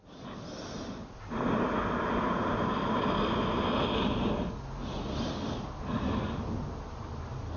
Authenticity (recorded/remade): recorded